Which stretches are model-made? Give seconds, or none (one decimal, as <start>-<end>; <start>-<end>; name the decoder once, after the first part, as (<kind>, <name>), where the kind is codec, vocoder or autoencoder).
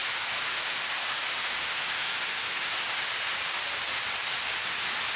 0.0-3.1 (autoencoder, DAC-VAE)